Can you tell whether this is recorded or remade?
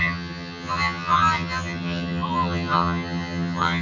remade